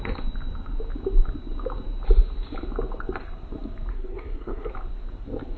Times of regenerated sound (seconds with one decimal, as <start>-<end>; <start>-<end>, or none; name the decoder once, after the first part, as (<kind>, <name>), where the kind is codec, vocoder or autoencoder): 3.9-4.7 (codec, SNAC)